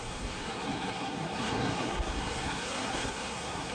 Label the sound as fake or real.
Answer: fake